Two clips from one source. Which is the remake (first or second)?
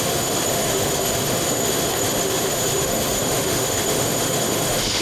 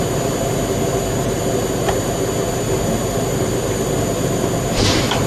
first